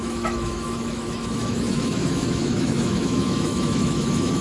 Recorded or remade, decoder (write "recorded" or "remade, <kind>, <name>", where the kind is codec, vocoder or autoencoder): remade, autoencoder, DAC-VAE